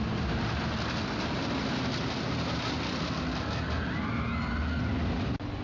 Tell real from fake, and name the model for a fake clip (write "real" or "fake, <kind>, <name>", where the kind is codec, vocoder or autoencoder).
real